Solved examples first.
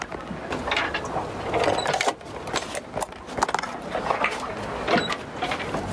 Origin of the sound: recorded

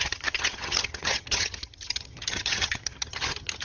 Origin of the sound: remade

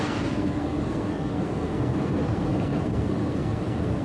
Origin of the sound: remade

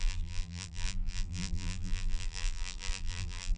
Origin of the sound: remade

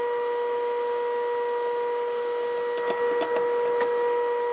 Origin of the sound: recorded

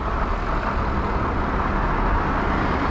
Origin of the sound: recorded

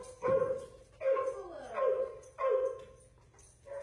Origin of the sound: recorded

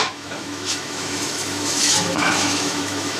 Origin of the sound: remade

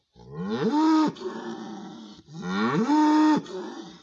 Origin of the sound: recorded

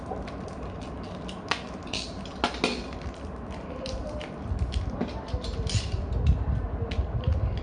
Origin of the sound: recorded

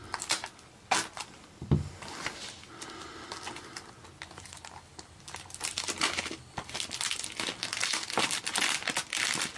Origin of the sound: recorded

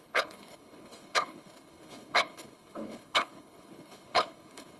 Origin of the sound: remade